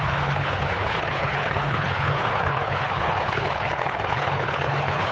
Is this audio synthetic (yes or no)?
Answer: yes